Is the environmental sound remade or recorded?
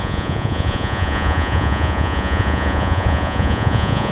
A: remade